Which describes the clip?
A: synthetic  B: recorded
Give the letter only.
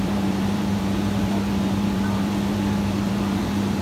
A